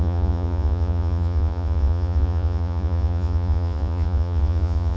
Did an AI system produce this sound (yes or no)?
yes